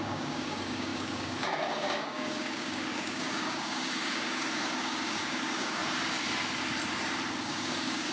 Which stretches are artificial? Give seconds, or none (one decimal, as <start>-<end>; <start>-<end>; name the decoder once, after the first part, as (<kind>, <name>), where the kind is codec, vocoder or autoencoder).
0.0-5.8 (codec, DAC); 7.5-8.1